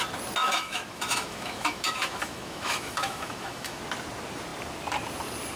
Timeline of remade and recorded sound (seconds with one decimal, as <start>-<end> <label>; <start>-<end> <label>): 0.0-0.4 recorded; 0.4-3.8 remade; 3.8-5.6 recorded